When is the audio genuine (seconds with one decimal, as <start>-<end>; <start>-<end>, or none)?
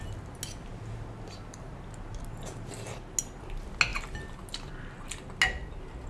0.0-6.1